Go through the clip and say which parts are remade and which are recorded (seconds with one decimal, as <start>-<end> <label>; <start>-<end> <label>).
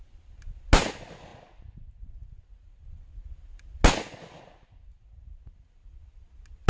0.0-6.7 recorded